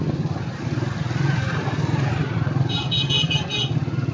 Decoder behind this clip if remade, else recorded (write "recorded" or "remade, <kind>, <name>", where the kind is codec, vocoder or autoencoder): recorded